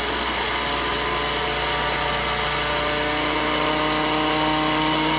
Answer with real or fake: real